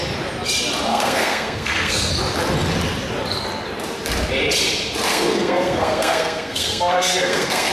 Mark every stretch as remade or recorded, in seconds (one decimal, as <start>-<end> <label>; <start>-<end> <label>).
0.0-0.9 recorded; 0.9-2.1 remade; 2.1-5.1 recorded; 5.1-7.7 remade